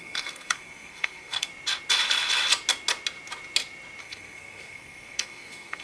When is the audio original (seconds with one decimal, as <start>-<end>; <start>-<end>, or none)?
1.5-4.0